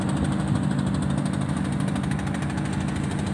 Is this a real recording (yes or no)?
yes